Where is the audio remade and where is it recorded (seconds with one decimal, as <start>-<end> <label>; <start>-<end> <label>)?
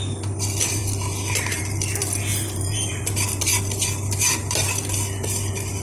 0.0-2.3 recorded; 2.3-3.0 remade; 3.0-5.8 recorded